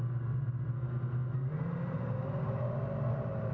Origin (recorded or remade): recorded